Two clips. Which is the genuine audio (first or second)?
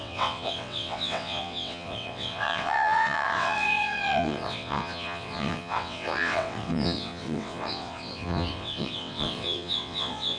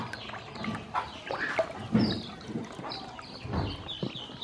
second